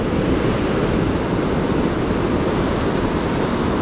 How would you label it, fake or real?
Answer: real